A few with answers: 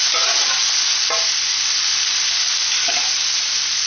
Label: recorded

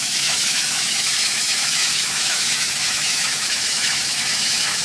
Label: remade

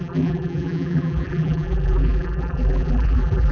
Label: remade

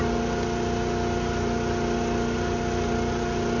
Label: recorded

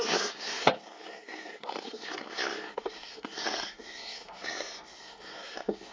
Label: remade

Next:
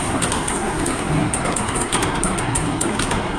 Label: remade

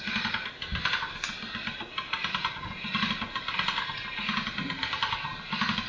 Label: recorded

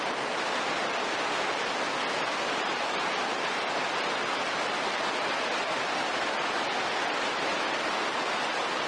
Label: recorded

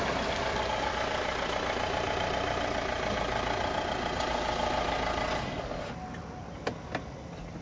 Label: recorded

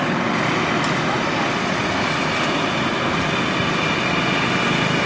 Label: recorded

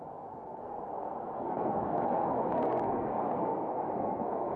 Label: remade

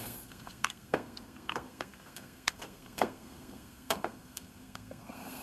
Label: remade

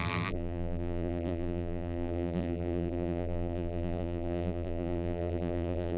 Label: remade